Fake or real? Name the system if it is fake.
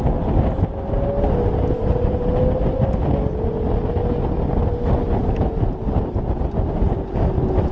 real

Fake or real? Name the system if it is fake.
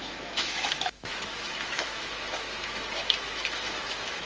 fake, autoencoder, DAC-VAE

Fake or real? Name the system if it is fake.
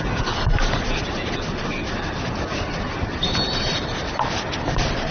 real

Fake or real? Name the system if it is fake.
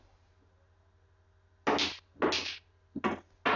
real